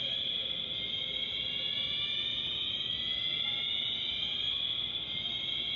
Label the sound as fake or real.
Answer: real